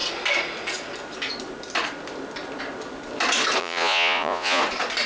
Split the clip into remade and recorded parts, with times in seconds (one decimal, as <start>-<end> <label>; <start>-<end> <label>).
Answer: 0.0-3.6 recorded; 3.6-4.6 remade; 4.6-5.1 recorded